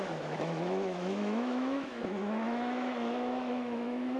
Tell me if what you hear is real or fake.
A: fake